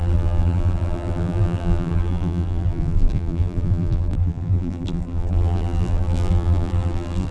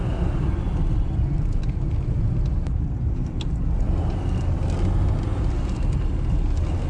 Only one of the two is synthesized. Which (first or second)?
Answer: first